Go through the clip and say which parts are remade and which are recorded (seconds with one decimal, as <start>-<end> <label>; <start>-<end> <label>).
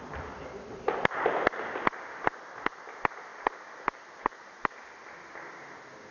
0.0-6.1 recorded